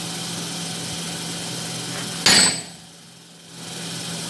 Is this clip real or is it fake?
real